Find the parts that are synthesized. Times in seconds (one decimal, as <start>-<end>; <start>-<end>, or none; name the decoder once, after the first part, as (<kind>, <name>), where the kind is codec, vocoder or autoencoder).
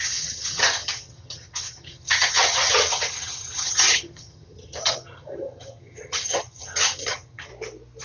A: 0.0-7.5 (vocoder, HiFi-GAN)